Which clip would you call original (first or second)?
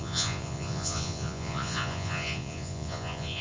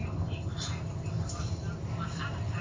second